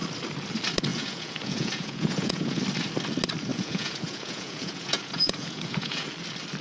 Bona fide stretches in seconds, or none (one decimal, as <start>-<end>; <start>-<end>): 0.0-0.9; 2.6-3.5; 6.1-6.6